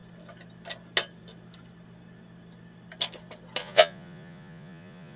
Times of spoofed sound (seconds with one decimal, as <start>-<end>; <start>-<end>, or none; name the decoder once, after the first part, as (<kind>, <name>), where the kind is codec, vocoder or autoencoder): 3.6-5.2 (vocoder, Vocos)